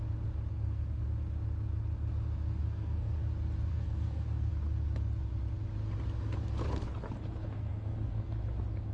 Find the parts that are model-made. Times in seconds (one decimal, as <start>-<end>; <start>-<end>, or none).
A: 0.5-1.0; 2.6-3.2; 3.7-4.5; 7.4-8.3

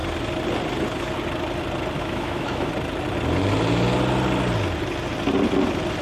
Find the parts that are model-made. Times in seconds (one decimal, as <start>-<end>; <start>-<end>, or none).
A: 2.0-2.7

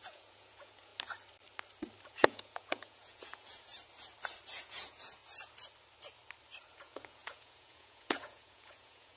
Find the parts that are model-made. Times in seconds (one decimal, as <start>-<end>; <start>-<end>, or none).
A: 0.0-0.9; 2.1-3.7; 4.5-5.2; 6.7-9.2